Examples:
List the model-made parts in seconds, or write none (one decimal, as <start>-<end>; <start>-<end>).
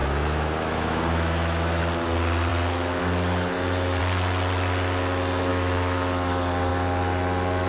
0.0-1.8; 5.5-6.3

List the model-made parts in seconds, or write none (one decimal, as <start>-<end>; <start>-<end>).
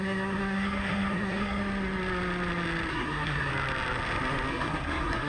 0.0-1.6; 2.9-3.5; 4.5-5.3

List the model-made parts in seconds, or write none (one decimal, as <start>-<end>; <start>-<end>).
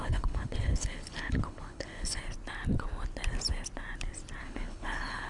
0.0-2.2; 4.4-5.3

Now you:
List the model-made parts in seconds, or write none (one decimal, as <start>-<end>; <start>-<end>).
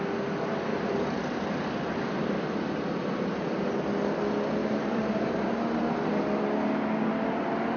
0.7-1.3; 4.6-5.5